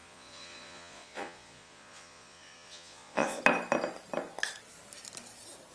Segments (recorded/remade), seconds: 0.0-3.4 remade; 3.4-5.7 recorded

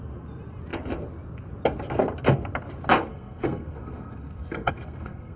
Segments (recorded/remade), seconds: 0.0-3.1 recorded; 3.1-5.4 remade

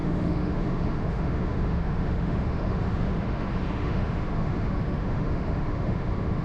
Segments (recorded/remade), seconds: 0.0-6.4 remade

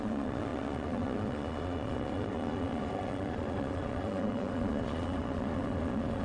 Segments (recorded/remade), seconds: 0.0-6.2 remade